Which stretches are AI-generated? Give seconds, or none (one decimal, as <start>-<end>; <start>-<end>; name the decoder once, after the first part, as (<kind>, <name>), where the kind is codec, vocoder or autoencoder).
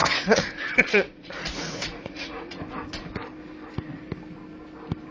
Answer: 0.0-2.6 (vocoder, Vocos)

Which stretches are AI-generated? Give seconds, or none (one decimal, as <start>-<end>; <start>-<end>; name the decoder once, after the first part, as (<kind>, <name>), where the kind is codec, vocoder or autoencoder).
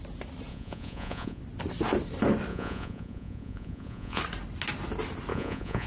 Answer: 0.5-1.4 (vocoder, Vocos); 2.5-4.2; 5.3-5.9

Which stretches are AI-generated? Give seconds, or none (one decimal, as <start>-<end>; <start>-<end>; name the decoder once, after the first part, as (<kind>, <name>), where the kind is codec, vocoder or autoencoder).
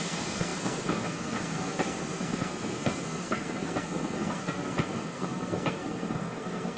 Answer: 0.0-6.8 (codec, SNAC)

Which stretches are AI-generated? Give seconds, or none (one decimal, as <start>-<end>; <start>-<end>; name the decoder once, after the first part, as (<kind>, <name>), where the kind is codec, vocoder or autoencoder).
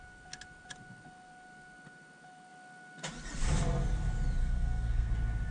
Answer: 4.4-5.1 (codec, SNAC)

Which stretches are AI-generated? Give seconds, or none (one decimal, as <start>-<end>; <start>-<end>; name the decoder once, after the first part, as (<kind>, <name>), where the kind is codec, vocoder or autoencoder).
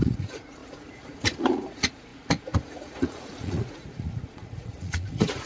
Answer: 0.0-5.5 (vocoder, Vocos)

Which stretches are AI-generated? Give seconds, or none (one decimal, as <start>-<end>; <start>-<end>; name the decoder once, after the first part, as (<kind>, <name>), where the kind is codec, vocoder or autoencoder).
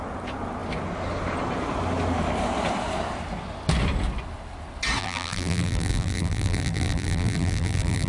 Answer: 5.0-8.1 (vocoder, BigVGAN v2)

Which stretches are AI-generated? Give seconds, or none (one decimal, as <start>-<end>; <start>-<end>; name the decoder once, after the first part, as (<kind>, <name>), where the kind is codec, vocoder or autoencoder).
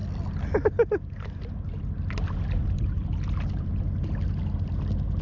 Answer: none